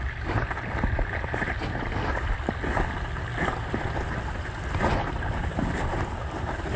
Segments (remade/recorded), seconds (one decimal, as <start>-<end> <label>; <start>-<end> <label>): 0.0-6.8 recorded